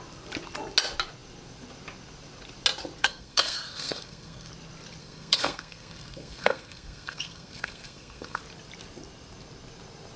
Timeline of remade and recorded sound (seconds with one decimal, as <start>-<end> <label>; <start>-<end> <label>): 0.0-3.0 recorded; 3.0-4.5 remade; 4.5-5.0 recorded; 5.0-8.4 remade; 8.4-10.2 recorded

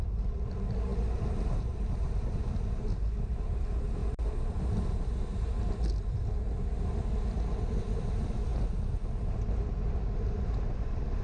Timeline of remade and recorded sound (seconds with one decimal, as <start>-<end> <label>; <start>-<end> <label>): 0.0-11.2 recorded

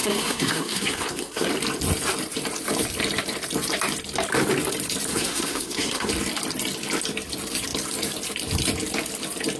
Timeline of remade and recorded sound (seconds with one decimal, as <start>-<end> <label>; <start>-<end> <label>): 0.0-1.5 remade; 1.5-5.1 recorded; 5.1-6.1 remade; 6.1-9.6 recorded